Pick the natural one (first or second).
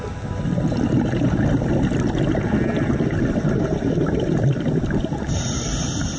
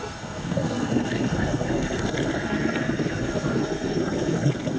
first